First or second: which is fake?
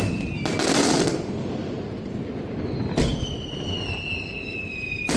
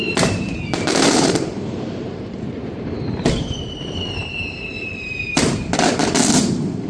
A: second